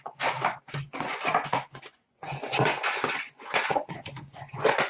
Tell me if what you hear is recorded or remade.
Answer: remade